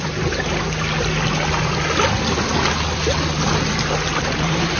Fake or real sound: real